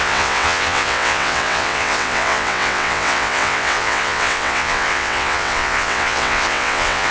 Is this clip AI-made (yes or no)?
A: yes